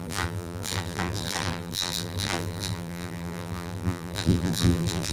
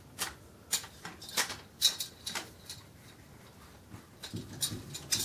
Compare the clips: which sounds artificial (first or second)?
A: first